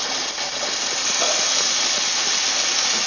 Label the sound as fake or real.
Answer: real